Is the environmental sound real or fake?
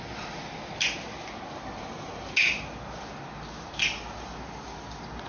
real